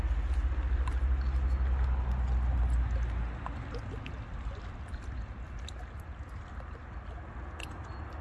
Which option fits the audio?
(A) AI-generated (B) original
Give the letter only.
B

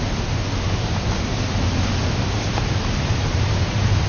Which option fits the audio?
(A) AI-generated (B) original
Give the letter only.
B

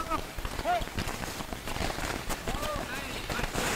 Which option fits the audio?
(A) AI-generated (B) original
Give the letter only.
A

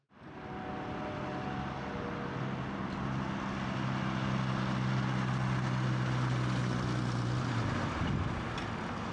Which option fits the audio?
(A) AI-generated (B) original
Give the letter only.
B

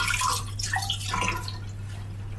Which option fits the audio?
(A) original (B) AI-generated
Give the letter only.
A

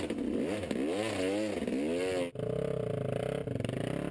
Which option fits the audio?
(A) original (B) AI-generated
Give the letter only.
A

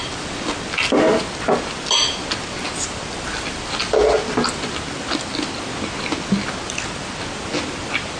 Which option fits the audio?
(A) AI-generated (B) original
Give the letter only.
B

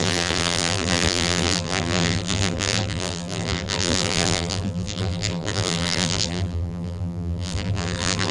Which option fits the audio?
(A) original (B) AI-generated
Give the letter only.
B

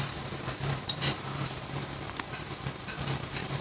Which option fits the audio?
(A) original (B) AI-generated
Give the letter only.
B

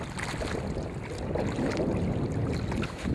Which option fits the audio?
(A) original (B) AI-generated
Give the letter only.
A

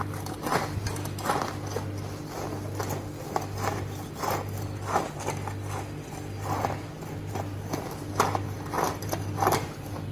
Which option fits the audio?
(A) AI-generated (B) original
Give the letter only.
A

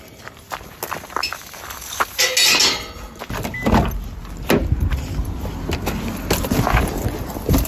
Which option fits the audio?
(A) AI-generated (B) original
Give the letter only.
B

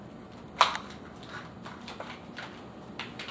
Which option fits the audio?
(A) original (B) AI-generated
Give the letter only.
A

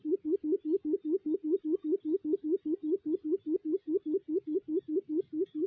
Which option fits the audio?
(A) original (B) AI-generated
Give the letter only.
A